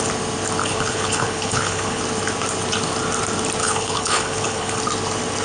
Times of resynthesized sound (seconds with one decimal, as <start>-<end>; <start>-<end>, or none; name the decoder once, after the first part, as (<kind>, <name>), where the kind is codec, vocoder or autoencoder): 0.6-2.0 (codec, HILCodec); 3.6-4.8